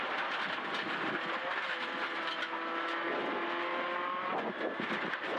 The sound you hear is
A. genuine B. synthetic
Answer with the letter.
A